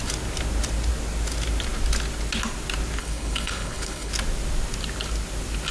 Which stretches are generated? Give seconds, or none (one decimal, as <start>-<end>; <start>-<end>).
3.0-4.1